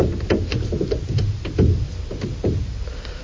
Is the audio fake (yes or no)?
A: no